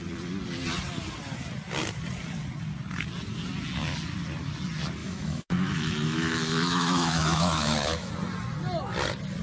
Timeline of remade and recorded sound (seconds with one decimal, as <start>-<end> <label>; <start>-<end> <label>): 0.0-5.0 recorded; 5.0-8.1 remade; 8.1-9.4 recorded